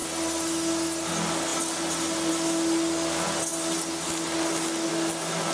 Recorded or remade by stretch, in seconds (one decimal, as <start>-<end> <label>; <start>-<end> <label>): 0.0-5.5 recorded